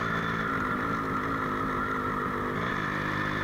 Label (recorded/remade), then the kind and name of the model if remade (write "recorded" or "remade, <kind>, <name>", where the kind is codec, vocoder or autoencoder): recorded